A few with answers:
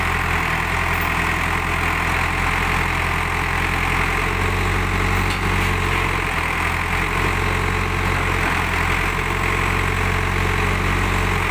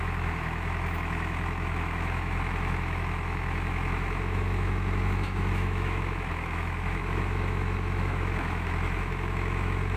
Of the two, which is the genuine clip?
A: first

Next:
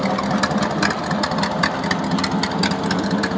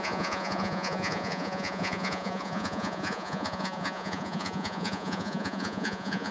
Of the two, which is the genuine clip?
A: first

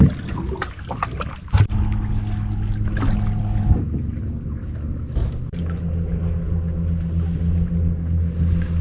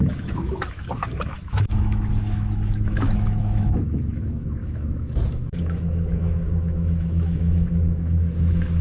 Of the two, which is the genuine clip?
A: first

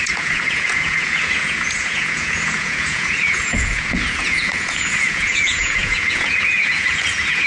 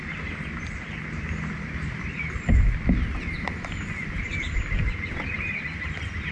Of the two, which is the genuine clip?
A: second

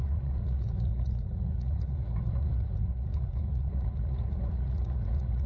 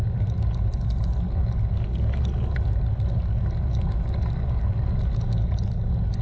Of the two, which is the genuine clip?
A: second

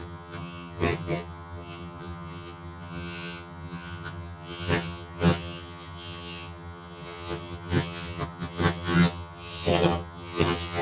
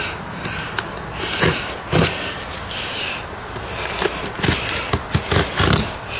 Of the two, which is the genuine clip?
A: second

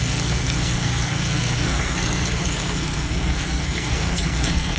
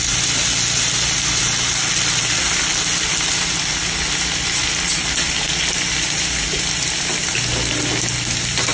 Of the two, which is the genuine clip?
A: second